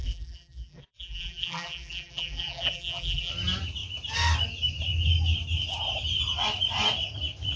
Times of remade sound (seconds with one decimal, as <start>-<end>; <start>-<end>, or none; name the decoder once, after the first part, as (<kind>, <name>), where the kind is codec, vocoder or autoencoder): 0.0-3.3 (vocoder, BigVGAN v2)

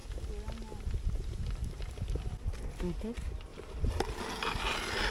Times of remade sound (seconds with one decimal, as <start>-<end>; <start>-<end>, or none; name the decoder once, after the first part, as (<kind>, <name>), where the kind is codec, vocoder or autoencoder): 3.5-4.0 (vocoder, BigVGAN v2)

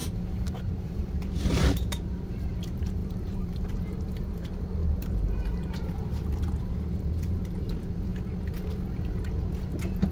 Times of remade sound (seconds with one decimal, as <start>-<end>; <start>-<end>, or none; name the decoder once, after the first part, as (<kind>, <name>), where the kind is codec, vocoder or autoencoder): 0.0-8.1 (vocoder, BigVGAN v2)

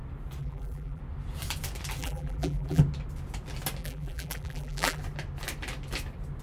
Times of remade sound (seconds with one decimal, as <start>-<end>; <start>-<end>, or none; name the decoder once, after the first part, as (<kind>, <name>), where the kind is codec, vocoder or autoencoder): 0.4-1.0 (vocoder, BigVGAN v2); 2.0-2.8; 3.8-5.0

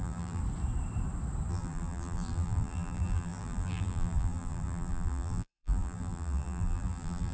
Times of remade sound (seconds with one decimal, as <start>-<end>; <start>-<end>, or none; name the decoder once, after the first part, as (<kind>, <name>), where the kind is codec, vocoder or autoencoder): 0.0-0.4 (vocoder, BigVGAN v2); 1.5-7.3

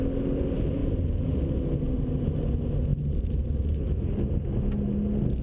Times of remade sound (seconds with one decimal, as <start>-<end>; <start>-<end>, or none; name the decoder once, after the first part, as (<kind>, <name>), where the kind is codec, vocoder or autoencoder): 0.8-1.4 (vocoder, BigVGAN v2); 2.9-4.1

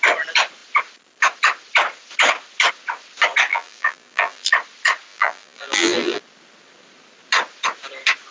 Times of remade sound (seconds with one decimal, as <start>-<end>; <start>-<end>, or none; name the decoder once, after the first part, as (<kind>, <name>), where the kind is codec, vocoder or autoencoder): 3.5-4.5 (vocoder, BigVGAN v2); 5.1-6.2